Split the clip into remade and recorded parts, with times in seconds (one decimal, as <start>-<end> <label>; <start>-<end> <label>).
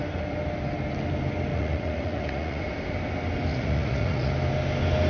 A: 0.0-1.5 recorded; 1.5-2.6 remade; 2.6-3.5 recorded; 3.5-4.3 remade; 4.3-5.1 recorded